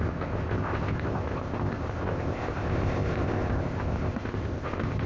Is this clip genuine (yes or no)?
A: no